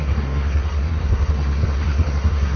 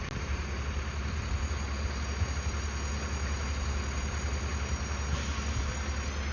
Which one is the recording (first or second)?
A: second